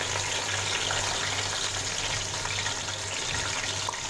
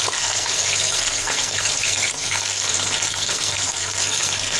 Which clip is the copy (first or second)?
second